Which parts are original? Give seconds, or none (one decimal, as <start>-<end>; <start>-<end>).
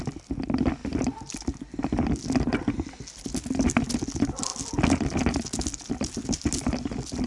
0.0-7.3